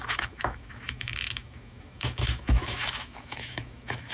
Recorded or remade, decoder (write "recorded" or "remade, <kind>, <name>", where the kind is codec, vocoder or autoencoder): remade, autoencoder, DAC-VAE